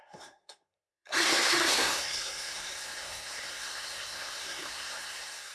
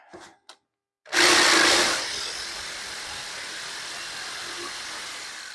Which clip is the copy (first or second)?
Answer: first